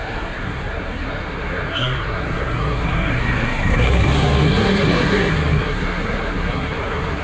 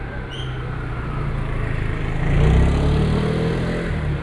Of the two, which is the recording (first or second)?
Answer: second